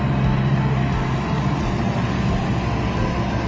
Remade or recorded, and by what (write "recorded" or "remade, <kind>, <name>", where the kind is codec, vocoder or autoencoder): recorded